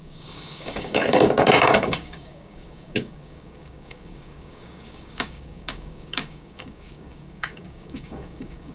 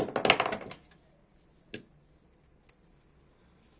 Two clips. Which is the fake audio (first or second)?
first